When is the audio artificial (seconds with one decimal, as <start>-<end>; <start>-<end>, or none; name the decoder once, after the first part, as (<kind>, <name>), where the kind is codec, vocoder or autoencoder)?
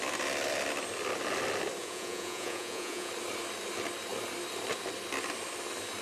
1.8-3.1 (vocoder, Vocos)